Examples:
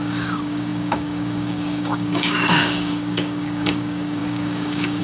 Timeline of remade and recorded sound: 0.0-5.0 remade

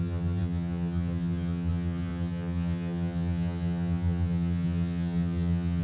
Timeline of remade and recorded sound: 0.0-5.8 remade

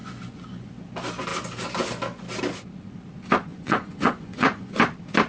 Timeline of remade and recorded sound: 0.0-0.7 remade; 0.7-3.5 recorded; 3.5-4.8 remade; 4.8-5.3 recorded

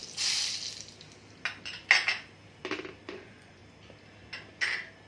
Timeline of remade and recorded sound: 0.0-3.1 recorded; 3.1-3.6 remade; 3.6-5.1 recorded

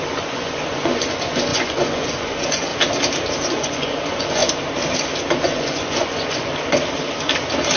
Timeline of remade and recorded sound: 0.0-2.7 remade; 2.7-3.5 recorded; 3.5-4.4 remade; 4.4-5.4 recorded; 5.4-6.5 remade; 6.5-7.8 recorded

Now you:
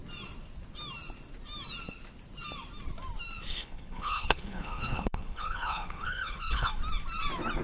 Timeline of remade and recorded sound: 0.0-3.5 recorded; 3.5-6.7 remade; 6.7-7.6 recorded

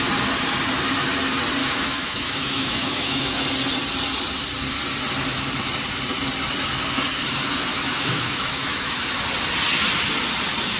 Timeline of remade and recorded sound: 0.0-1.6 recorded; 1.6-3.4 remade; 3.4-7.7 recorded; 7.7-9.2 remade; 9.2-10.8 recorded

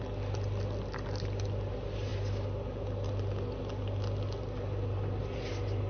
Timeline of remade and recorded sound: 0.0-5.9 recorded